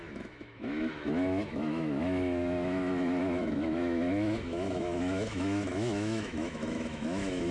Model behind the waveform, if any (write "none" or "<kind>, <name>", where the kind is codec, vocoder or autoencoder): autoencoder, DAC-VAE